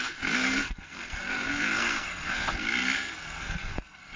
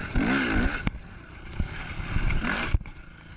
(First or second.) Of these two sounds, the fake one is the first